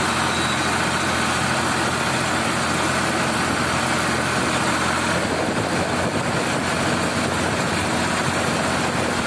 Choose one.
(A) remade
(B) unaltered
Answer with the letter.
B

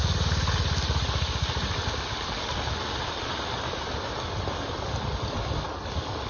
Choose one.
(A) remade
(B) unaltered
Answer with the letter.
B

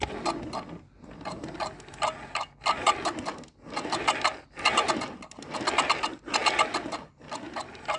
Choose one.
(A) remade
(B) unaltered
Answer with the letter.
B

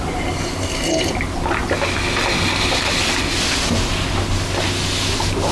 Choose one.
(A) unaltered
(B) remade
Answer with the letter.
A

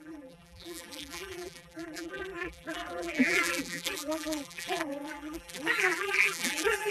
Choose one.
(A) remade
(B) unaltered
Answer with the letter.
A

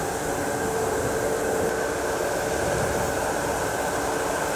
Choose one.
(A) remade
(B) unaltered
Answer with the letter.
B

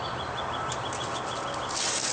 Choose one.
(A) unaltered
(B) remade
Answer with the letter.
A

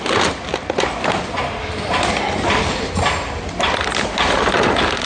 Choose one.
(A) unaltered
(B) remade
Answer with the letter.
A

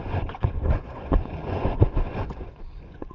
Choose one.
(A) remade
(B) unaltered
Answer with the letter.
A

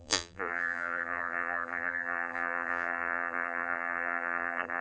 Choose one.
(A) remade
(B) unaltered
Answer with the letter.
A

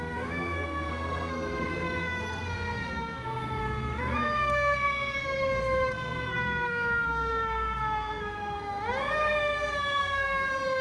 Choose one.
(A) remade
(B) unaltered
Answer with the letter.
A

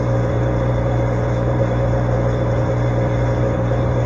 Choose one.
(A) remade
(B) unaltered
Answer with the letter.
A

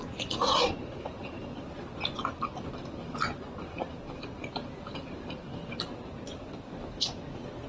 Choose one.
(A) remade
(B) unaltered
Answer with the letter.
B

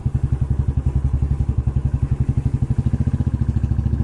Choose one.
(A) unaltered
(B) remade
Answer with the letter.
A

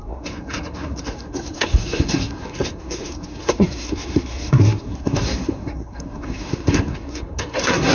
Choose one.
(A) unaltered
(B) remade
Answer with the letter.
B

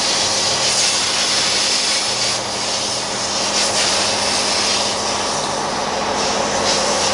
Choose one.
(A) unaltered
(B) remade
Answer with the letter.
A